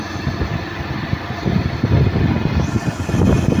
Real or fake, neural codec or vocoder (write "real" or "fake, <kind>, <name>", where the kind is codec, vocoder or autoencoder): real